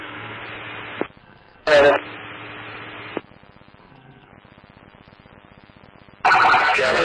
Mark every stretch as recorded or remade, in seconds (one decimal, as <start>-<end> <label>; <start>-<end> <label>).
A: 0.0-0.4 remade; 0.4-1.2 recorded; 1.2-1.7 remade; 1.7-3.8 recorded; 3.8-4.3 remade; 4.3-6.6 recorded; 6.6-7.0 remade